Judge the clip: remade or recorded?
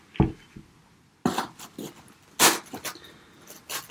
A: recorded